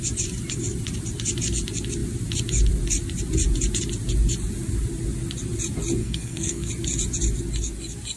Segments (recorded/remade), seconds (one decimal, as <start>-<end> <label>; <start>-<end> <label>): 0.0-6.0 recorded; 6.0-6.7 remade; 6.7-8.2 recorded